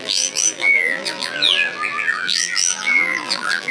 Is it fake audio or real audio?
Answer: fake